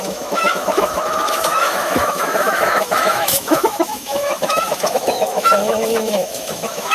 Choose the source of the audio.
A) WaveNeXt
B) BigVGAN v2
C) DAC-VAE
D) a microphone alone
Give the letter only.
C